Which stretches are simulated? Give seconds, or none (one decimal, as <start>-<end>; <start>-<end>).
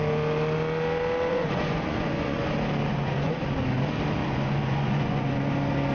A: 1.3-2.5; 2.9-3.4; 4.2-5.4